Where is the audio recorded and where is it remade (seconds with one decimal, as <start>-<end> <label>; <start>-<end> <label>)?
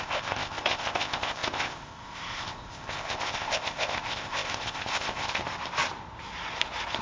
0.0-5.4 remade; 5.4-7.0 recorded